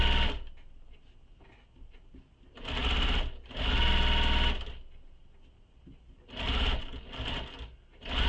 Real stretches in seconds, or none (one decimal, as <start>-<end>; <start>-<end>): 0.0-8.3

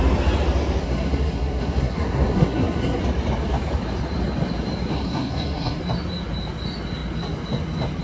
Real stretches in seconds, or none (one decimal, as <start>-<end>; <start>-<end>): 0.0-0.8; 3.0-4.9; 5.8-8.0

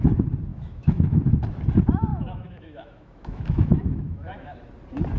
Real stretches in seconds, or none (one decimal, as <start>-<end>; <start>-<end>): 0.0-0.5; 1.2-2.1; 4.6-5.2

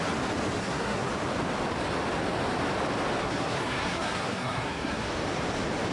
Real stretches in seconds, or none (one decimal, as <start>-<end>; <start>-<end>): 0.0-0.6; 1.1-3.2; 5.1-5.9